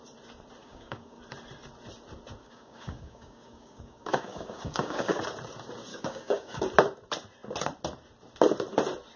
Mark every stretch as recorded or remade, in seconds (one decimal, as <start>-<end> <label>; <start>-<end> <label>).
0.0-0.6 recorded; 0.6-1.2 remade; 1.2-2.4 recorded; 2.4-5.2 remade; 5.2-5.9 recorded; 5.9-6.6 remade; 6.6-9.2 recorded